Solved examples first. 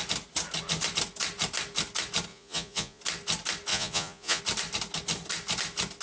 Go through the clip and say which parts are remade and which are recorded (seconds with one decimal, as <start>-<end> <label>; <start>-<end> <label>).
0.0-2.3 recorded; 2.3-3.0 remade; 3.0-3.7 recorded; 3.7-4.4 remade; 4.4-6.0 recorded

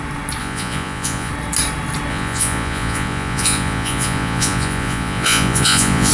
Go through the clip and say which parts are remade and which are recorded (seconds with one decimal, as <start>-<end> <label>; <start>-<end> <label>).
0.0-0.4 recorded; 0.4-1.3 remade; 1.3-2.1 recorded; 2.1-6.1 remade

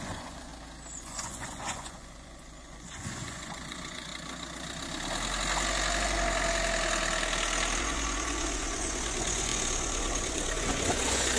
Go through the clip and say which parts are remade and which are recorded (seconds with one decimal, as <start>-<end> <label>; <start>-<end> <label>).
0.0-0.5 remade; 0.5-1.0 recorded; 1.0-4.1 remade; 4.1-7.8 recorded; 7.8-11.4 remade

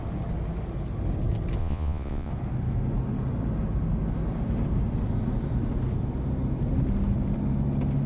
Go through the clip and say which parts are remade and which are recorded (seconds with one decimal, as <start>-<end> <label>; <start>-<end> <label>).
0.0-1.6 recorded; 1.6-2.3 remade; 2.3-8.1 recorded